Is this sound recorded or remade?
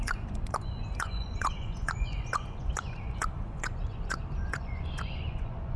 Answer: remade